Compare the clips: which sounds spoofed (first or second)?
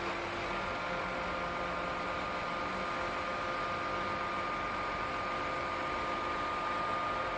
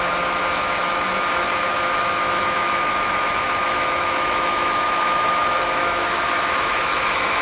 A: second